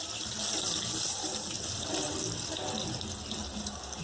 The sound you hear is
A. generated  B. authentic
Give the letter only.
B